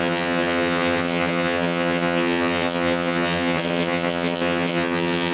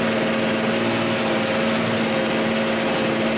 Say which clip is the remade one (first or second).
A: first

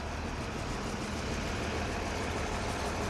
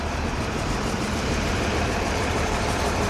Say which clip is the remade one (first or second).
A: second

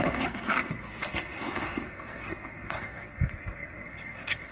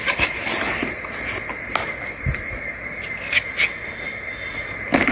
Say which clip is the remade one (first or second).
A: first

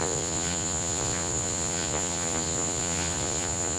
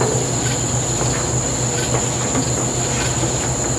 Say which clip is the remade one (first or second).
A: first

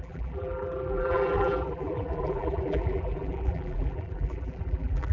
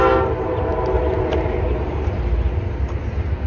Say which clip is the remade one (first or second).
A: first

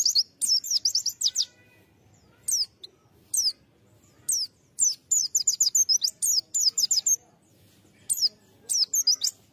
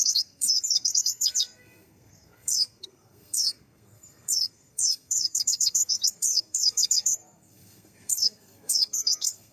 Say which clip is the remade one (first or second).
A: second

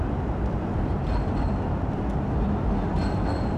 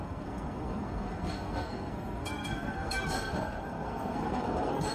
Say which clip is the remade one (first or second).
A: second